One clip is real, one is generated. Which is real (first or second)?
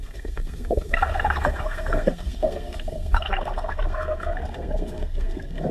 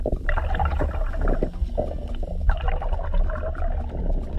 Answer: second